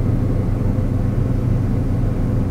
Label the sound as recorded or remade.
recorded